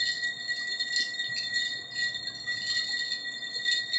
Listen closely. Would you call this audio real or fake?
real